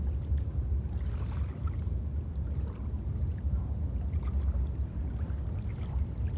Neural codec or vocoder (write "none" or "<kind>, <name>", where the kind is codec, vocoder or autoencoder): none